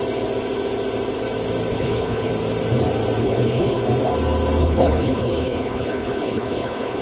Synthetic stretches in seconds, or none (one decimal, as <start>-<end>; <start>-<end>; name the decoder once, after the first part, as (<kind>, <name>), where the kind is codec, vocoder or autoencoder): 1.7-2.3 (codec, HILCodec); 3.2-3.8; 4.6-7.0